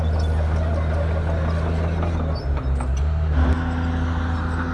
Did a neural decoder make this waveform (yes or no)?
no